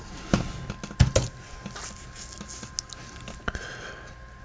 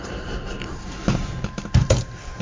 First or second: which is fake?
second